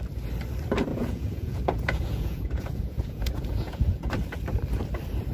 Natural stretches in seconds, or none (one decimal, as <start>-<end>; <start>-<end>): 0.0-0.9; 4.1-5.3